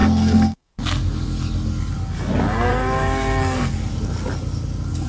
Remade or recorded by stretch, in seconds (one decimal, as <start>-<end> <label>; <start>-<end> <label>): 0.0-0.7 remade; 0.7-2.7 recorded; 2.7-3.7 remade; 3.7-5.1 recorded